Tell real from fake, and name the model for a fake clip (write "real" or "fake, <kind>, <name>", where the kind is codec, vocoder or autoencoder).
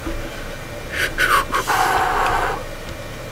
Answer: real